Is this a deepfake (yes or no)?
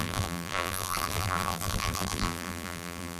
yes